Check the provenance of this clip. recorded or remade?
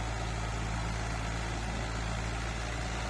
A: recorded